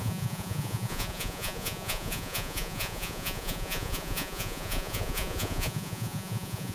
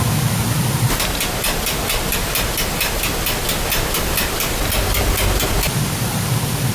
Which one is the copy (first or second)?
first